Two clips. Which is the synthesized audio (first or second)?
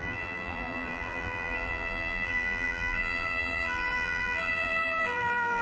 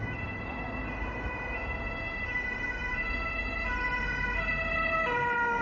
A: first